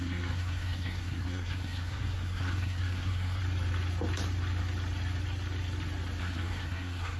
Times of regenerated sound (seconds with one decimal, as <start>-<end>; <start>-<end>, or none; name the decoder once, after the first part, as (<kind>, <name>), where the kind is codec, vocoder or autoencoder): 0.0-3.4 (codec, SNAC); 6.2-7.2